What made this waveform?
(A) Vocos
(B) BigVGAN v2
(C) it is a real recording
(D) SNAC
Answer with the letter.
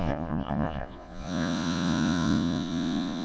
A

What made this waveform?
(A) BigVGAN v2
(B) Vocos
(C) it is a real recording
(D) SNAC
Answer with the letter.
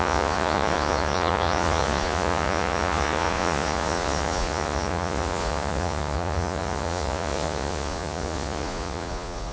B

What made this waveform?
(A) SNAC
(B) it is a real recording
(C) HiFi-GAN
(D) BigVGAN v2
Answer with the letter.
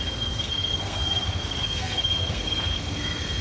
A